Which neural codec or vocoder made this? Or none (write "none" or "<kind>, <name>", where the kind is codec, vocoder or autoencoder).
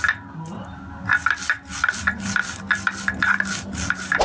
none